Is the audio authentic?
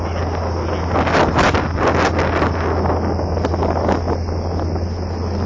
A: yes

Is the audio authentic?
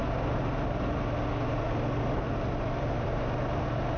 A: yes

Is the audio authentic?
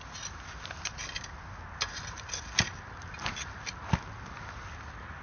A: yes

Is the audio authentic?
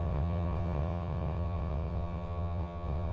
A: no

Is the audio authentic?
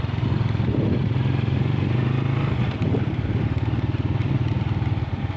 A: yes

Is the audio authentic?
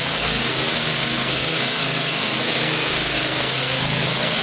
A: no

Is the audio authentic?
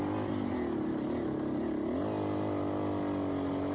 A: yes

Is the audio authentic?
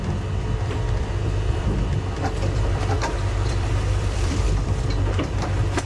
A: no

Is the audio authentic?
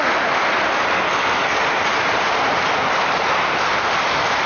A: yes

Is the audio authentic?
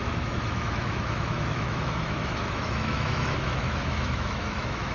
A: no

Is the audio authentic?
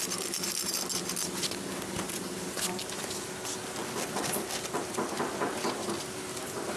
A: yes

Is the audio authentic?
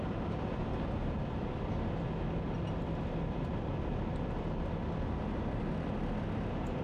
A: yes